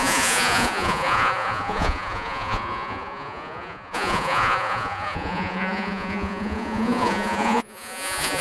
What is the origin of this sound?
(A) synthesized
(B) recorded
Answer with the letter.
A